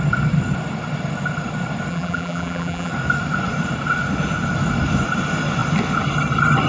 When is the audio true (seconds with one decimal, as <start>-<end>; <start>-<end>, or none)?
0.0-1.9; 2.9-6.7